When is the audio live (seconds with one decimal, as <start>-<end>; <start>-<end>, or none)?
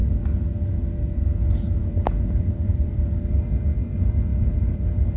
0.0-1.8; 3.3-4.3